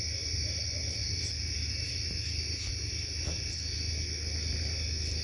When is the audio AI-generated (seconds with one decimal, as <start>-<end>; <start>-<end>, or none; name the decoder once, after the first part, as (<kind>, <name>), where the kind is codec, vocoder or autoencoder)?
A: 1.0-1.9 (vocoder, BigVGAN v2)